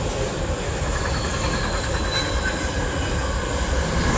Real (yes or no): yes